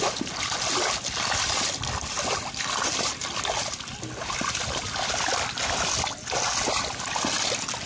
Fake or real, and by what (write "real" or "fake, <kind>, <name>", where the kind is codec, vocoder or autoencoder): real